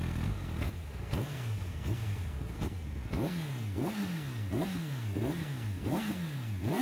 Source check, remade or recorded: remade